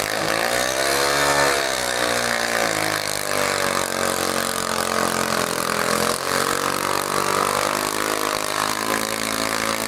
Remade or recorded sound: recorded